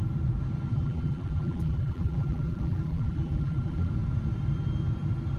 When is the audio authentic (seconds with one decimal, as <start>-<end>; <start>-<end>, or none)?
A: 0.0-0.7; 3.9-5.4